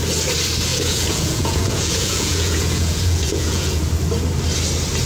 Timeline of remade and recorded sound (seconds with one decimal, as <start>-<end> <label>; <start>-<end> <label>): 0.0-0.7 recorded; 0.7-3.8 remade; 3.8-5.1 recorded

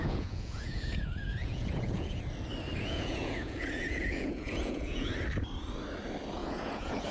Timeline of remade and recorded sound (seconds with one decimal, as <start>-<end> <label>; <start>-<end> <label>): 0.0-2.2 remade; 2.2-2.8 recorded; 2.8-5.1 remade; 5.1-6.4 recorded; 6.4-7.1 remade